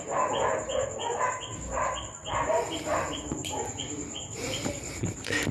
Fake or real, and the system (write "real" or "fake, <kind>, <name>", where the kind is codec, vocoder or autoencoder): fake, vocoder, BigVGAN v2